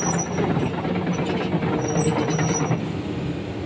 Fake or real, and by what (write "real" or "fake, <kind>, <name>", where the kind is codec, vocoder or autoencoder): real